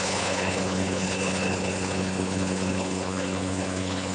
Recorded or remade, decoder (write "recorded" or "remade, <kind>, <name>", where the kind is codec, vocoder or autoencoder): remade, codec, HILCodec